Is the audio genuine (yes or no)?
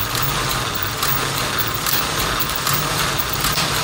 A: no